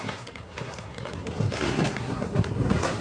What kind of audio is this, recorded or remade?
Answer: remade